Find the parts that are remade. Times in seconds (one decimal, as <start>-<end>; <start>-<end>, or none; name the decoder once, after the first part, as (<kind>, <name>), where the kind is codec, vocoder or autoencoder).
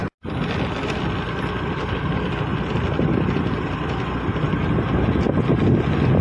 none